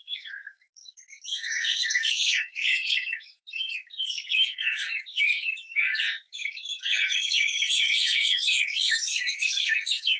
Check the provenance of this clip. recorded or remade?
remade